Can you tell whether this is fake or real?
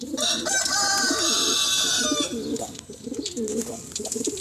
real